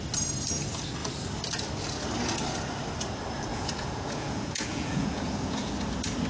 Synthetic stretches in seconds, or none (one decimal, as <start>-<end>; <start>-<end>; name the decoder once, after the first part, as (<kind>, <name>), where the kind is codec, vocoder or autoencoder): 3.5-5.7 (vocoder, Vocos)

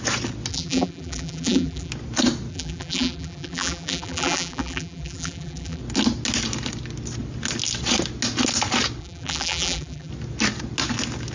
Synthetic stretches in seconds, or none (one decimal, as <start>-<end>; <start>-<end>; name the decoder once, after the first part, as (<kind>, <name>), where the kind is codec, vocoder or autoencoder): 0.5-1.9 (vocoder, BigVGAN v2); 2.5-5.8; 9.0-10.1

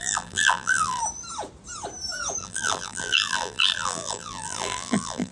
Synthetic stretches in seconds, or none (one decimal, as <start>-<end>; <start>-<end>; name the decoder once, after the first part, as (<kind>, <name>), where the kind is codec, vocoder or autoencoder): 0.0-1.0 (vocoder, BigVGAN v2); 2.4-5.3

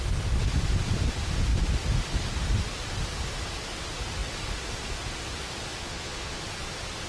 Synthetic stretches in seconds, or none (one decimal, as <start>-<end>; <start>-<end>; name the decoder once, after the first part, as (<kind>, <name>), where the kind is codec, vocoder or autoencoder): 5.8-6.4 (vocoder, Vocos)

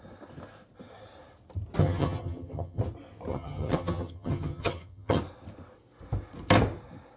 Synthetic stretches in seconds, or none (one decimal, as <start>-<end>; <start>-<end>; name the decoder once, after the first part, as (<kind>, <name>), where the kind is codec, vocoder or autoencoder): 1.8-2.8 (vocoder, HiFi-GAN); 3.3-5.2

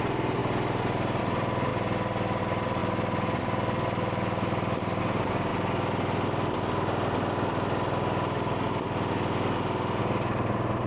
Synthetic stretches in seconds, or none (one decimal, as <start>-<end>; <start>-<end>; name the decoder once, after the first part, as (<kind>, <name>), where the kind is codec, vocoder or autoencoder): 0.0-0.4 (vocoder, BigVGAN v2); 1.2-1.7; 2.4-2.8; 5.0-5.5; 10.0-10.9

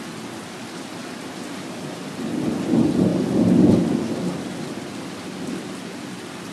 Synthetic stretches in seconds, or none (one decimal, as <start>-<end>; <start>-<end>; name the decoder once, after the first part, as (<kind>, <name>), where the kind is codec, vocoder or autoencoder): 0.0-1.0 (vocoder, BigVGAN v2); 1.7-3.1; 3.9-6.5